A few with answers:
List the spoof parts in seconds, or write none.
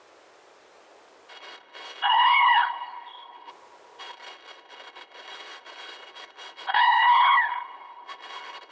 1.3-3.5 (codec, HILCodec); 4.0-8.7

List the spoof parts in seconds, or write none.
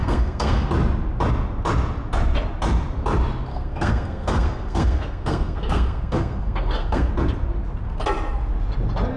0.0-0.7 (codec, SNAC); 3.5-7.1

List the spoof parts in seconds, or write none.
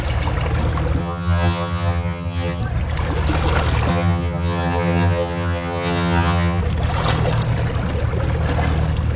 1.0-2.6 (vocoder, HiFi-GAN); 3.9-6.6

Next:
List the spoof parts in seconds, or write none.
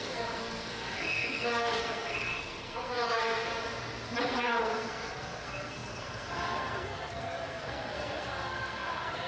0.0-3.5 (codec, SNAC); 4.2-9.3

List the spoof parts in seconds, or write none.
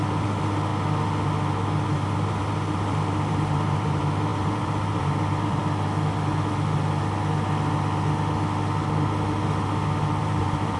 0.0-0.7 (vocoder, BigVGAN v2); 1.9-5.6; 10.2-10.8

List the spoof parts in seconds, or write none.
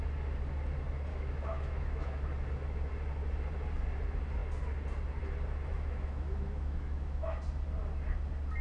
1.1-2.2 (autoencoder, DAC-VAE); 5.7-7.4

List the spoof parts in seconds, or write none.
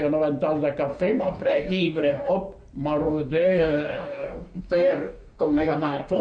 0.9-2.3 (codec, DAC); 3.0-6.2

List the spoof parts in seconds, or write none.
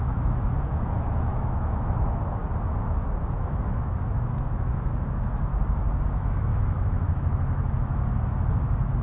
0.0-2.4 (autoencoder, DAC-VAE); 3.3-5.5; 6.1-9.0